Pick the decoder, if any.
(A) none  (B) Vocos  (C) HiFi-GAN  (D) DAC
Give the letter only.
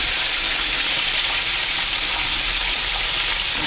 A